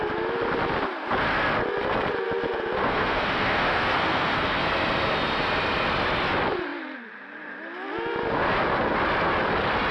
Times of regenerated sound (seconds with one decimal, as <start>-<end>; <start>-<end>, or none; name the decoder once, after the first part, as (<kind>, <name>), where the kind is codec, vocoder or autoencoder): 2.8-4.6 (codec, SNAC)